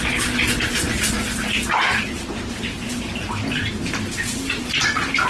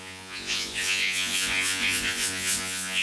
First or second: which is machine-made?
second